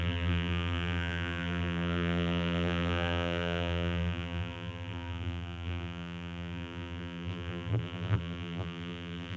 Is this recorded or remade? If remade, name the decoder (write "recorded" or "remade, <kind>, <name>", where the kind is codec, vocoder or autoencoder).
remade, vocoder, BigVGAN v2